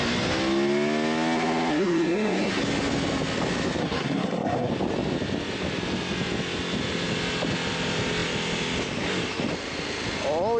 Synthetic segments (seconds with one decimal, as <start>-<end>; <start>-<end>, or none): 1.7-2.6; 3.8-4.7